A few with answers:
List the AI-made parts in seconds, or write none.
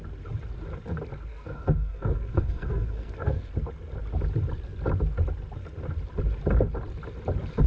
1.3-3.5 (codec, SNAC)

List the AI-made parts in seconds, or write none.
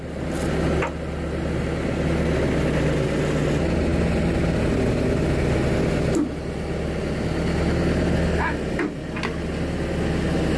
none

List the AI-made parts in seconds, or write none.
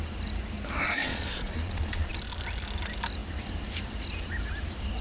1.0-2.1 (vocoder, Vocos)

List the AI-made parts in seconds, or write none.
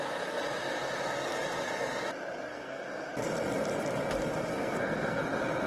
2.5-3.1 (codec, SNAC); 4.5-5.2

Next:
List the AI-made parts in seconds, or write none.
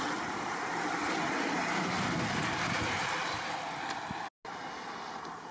none